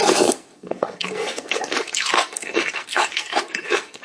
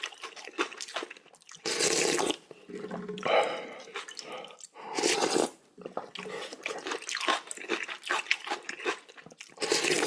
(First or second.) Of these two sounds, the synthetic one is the first